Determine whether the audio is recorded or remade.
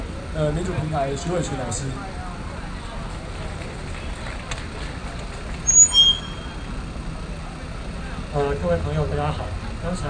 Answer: recorded